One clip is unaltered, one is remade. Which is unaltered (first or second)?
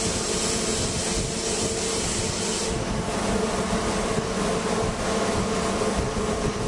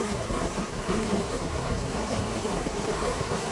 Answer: first